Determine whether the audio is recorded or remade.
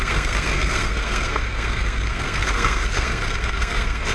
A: remade